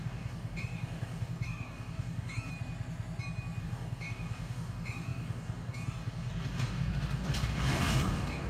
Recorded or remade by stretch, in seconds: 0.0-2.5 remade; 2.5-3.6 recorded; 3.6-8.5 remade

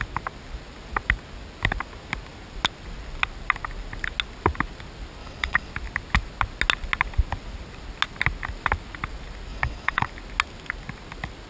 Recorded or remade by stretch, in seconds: 0.0-5.2 recorded; 5.2-5.7 remade; 5.7-9.5 recorded; 9.5-10.1 remade; 10.1-11.5 recorded

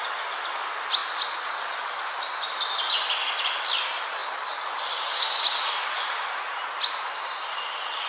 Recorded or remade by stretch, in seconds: 0.0-8.1 recorded